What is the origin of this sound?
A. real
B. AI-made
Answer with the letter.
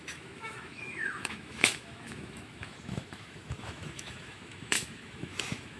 B